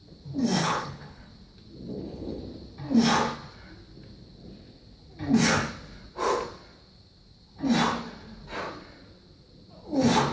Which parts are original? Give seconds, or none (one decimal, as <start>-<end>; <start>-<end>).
0.0-0.6; 1.3-1.9; 2.4-10.3